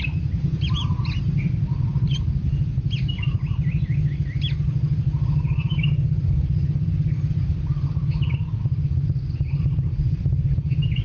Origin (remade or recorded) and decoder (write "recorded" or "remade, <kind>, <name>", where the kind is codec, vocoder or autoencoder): recorded